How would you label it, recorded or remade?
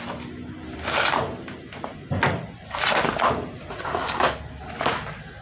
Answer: recorded